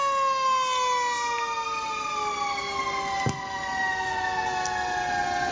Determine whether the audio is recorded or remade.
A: recorded